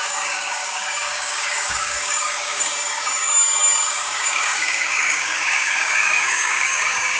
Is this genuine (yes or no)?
no